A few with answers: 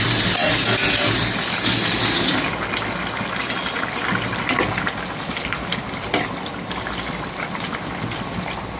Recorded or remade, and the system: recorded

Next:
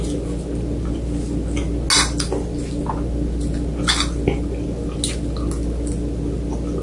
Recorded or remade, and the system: recorded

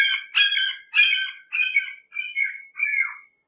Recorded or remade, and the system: recorded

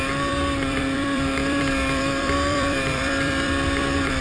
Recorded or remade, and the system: remade, vocoder, BigVGAN v2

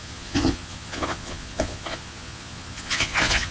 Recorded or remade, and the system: remade, vocoder, Vocos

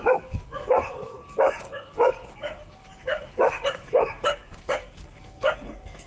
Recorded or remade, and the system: remade, codec, DAC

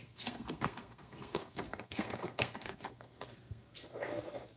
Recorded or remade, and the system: remade, codec, SNAC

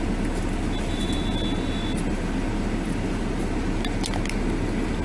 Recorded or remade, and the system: recorded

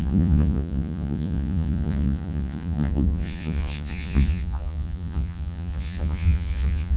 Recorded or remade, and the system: remade, vocoder, Vocos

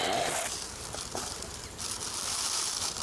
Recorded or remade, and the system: recorded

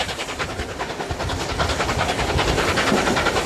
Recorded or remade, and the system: recorded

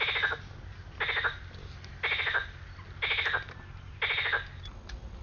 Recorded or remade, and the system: recorded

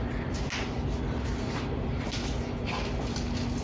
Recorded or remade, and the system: recorded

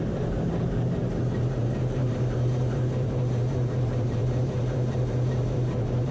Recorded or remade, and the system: remade, vocoder, BigVGAN v2